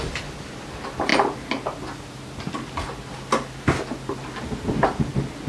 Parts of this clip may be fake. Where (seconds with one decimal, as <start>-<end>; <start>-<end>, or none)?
none